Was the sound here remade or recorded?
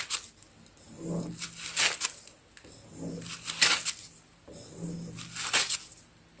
recorded